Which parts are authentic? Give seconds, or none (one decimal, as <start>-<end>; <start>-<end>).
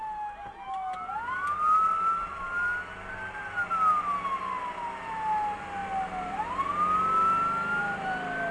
0.0-8.5